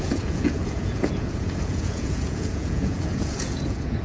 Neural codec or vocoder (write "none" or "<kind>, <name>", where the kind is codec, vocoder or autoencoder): vocoder, Vocos